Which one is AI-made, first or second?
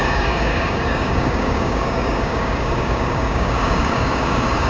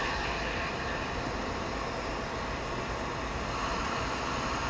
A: first